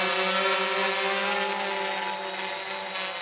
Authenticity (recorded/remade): recorded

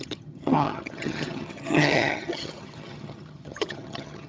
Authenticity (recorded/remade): remade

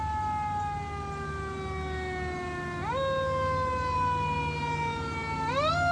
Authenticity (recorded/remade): recorded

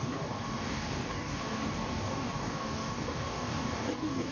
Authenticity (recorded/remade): remade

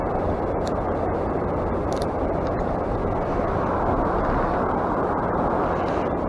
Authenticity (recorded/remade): recorded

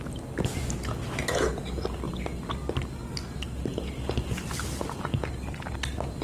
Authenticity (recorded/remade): recorded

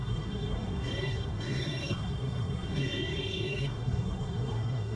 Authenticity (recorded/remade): remade